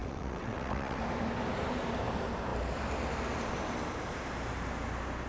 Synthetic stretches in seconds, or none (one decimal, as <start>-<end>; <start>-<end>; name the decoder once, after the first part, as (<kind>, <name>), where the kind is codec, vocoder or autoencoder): 0.0-1.0 (vocoder, WaveNeXt)